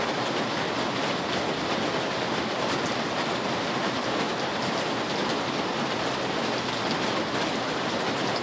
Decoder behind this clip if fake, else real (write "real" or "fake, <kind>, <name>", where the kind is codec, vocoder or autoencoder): real